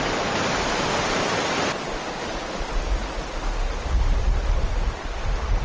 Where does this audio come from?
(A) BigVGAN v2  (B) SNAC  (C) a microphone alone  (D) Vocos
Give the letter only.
C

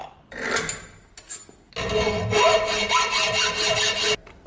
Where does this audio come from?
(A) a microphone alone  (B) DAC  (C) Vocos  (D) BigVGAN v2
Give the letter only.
A